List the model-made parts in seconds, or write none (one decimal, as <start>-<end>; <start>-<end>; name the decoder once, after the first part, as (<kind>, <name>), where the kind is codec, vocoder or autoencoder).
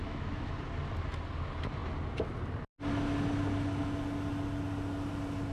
0.0-0.6 (autoencoder, DAC-VAE)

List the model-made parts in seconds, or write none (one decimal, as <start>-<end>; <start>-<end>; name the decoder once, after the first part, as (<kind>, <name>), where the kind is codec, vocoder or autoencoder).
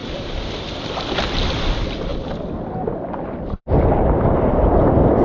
0.0-1.2 (vocoder, BigVGAN v2); 2.1-5.2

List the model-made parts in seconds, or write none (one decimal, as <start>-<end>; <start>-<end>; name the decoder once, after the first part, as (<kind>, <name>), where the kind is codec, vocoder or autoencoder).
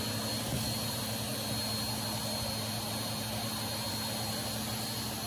none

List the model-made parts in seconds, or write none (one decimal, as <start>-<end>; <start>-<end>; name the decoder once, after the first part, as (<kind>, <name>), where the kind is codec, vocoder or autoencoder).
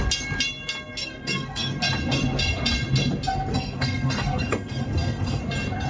1.0-1.8 (codec, SNAC); 3.5-5.4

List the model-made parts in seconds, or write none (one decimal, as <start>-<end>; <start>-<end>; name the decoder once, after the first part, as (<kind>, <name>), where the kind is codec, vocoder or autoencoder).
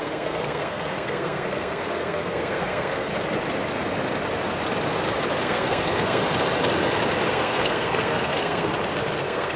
0.0-3.1 (codec, SNAC); 5.4-6.2; 7.3-8.7; 9.2-9.6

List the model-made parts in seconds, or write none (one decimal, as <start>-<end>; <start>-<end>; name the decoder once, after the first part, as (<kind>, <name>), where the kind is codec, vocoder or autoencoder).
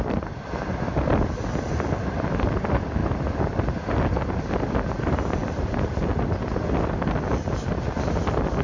none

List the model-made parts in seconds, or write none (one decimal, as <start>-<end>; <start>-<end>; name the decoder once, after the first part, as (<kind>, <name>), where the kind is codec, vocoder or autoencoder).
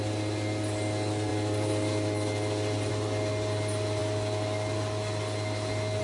none